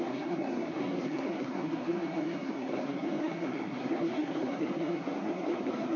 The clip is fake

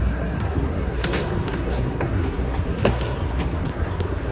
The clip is fake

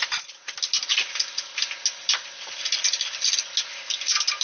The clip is real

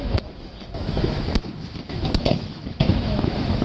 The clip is fake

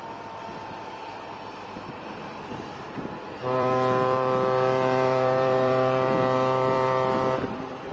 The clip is fake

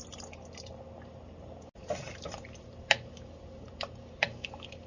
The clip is real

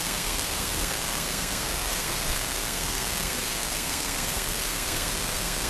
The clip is fake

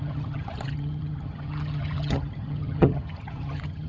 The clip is fake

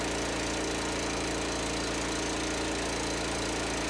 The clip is real